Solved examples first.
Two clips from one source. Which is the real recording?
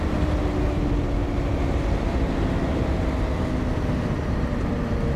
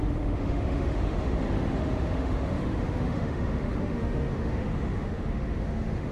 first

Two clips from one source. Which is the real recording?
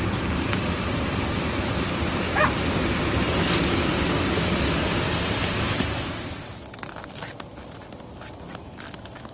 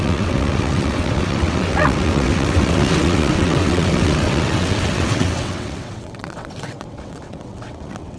first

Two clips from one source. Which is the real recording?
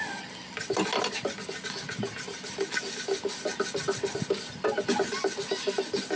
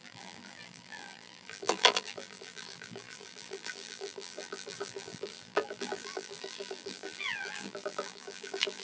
first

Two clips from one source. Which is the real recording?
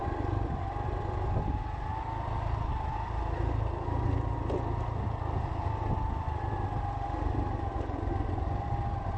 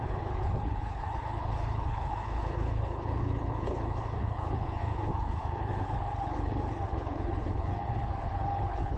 first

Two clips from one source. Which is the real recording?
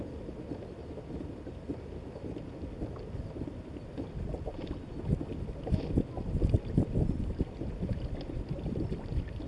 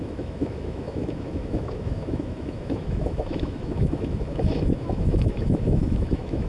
first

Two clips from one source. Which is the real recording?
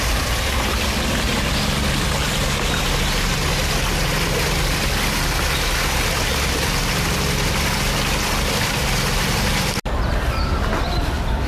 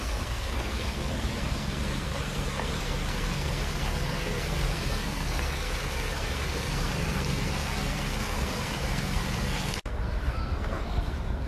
first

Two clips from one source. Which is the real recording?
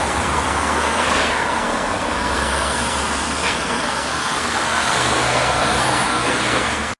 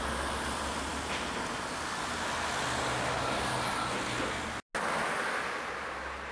second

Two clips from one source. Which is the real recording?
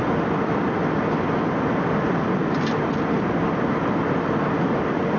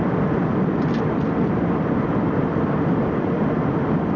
first